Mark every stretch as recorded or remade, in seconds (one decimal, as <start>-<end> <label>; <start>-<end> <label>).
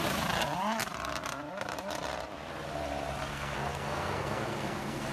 0.0-3.2 recorded; 3.2-5.1 remade